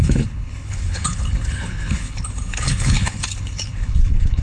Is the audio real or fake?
fake